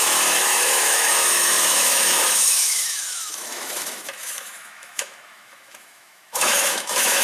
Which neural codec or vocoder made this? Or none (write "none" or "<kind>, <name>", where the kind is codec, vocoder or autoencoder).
autoencoder, DAC-VAE